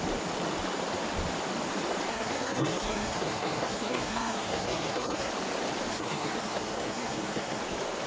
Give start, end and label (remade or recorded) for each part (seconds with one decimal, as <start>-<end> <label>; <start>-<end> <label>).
0.0-2.1 recorded; 2.1-5.3 remade; 5.3-5.9 recorded; 5.9-7.6 remade; 7.6-8.1 recorded